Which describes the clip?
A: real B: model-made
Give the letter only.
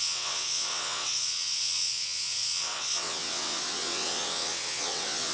B